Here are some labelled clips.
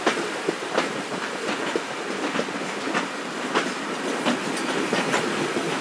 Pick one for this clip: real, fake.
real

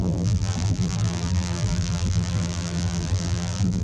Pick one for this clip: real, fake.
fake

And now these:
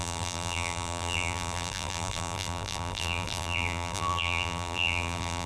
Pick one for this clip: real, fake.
fake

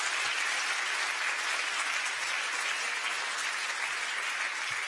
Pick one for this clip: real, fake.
real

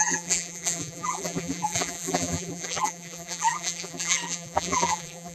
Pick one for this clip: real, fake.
fake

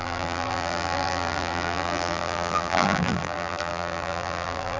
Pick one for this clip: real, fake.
fake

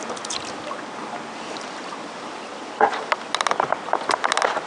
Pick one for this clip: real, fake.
real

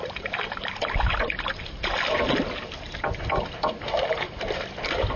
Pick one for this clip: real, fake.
fake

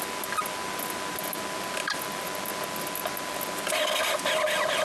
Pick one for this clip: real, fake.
real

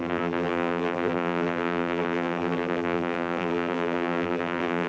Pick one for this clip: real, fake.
fake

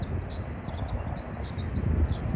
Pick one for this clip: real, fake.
real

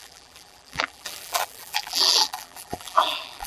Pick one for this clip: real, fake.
fake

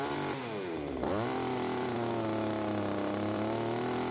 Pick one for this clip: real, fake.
fake